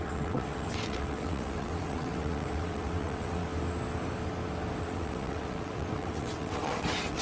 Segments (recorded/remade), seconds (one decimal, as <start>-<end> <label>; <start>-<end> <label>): 0.0-3.5 remade; 3.5-4.8 recorded; 4.8-7.2 remade